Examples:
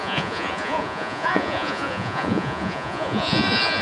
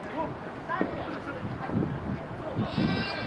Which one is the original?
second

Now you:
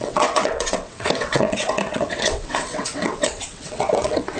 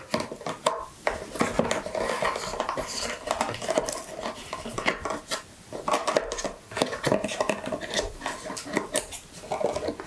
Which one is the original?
second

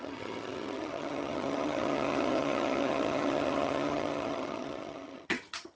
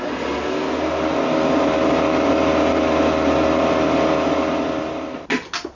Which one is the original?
second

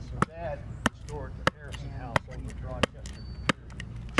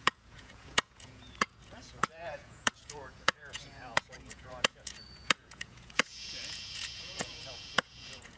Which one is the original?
first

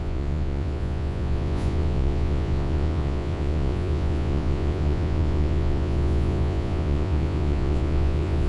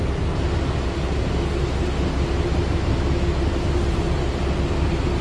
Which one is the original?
second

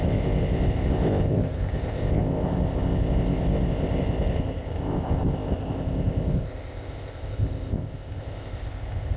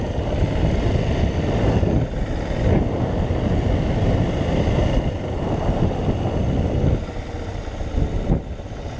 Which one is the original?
second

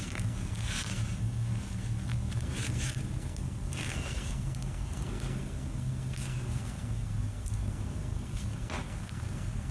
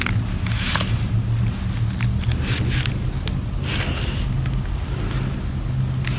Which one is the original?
second